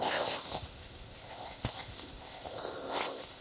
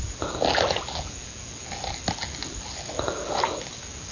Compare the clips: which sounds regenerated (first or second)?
first